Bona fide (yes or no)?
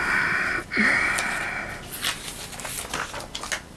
yes